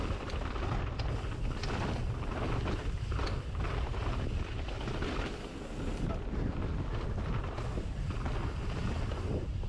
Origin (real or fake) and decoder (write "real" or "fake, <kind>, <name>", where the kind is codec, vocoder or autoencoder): real